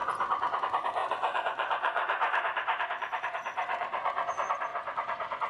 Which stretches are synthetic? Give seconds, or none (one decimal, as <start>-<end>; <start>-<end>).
0.0-0.6; 1.0-4.3; 4.7-5.5